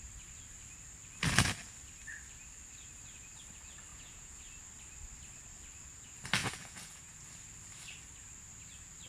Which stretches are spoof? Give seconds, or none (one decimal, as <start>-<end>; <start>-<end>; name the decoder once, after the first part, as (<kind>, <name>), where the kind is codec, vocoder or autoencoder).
3.9-4.4 (vocoder, Vocos); 6.4-7.2